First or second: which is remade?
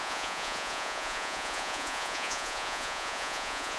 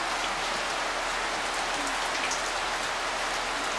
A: first